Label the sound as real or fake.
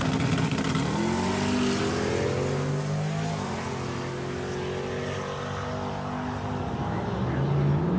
real